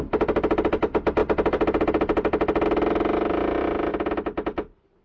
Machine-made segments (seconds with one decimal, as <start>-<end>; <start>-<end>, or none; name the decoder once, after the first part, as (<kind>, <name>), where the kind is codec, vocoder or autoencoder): none